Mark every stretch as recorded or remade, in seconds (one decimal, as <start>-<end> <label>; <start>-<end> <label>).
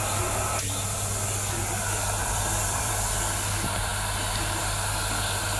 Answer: 0.0-2.2 recorded; 2.2-2.9 remade; 2.9-5.6 recorded